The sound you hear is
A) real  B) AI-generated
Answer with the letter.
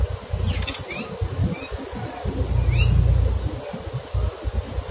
A